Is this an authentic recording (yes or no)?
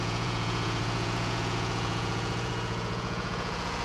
no